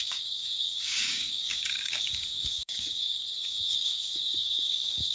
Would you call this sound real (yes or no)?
no